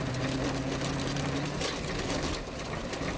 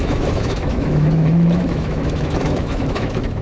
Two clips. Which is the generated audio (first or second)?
second